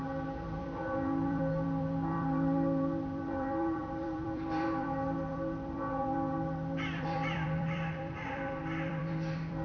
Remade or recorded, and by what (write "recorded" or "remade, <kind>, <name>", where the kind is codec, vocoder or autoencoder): remade, vocoder, BigVGAN v2